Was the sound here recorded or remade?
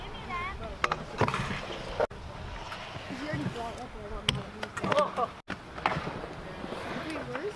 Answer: recorded